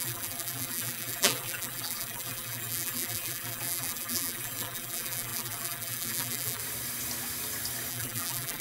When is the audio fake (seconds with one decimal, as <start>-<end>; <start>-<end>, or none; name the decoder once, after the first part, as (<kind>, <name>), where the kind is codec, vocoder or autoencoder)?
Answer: 0.0-6.6 (vocoder, BigVGAN v2); 7.9-8.6